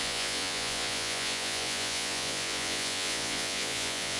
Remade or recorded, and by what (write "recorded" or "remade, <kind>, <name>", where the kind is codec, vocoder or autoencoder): remade, vocoder, Vocos